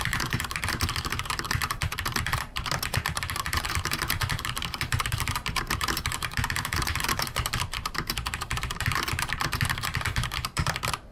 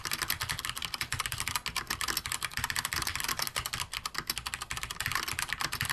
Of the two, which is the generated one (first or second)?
first